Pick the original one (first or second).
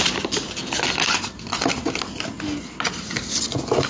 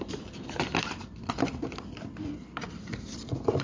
first